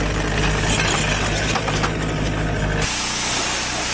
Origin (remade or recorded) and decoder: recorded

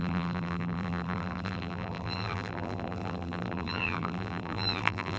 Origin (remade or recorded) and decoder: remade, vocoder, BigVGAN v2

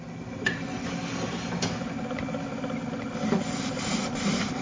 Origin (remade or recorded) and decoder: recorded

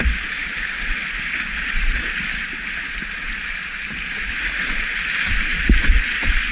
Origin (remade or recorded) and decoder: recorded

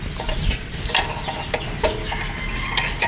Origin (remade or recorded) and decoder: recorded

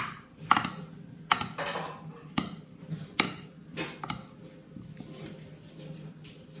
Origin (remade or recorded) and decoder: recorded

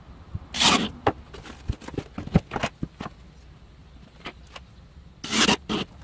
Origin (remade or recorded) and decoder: recorded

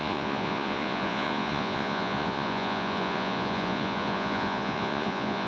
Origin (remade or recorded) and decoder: remade, vocoder, Vocos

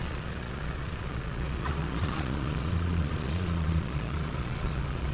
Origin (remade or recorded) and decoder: remade, vocoder, Vocos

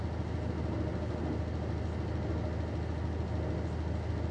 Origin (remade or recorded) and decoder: recorded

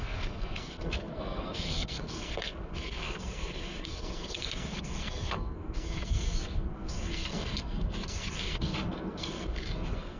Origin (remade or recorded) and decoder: remade, codec, SNAC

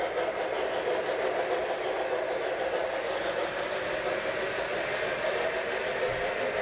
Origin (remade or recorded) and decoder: recorded